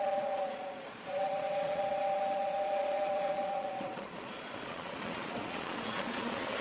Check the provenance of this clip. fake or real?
fake